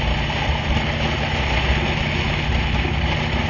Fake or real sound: real